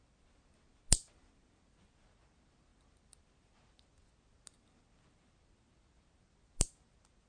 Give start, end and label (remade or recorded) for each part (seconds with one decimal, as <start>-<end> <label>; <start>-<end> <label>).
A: 0.0-7.3 recorded